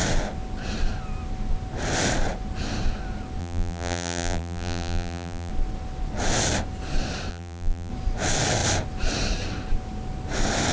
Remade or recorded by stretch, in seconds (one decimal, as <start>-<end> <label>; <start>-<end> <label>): 0.0-3.4 recorded; 3.4-5.5 remade; 5.5-7.3 recorded; 7.3-7.9 remade; 7.9-10.7 recorded